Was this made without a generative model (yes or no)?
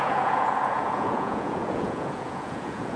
no